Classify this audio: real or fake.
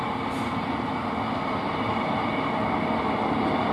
real